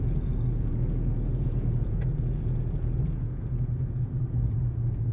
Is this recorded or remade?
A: remade